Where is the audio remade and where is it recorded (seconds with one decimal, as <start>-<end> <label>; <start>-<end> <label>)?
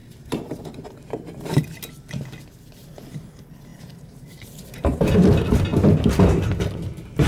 0.0-1.6 remade; 1.6-3.7 recorded; 3.7-5.0 remade; 5.0-7.3 recorded